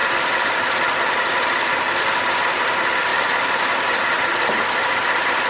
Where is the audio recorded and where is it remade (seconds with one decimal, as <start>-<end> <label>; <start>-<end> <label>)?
0.0-3.1 remade; 3.1-4.9 recorded; 4.9-5.5 remade